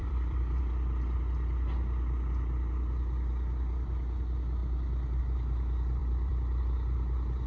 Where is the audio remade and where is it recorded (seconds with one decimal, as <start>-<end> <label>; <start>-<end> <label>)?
0.0-0.6 remade; 0.6-6.0 recorded; 6.0-6.6 remade; 6.6-7.5 recorded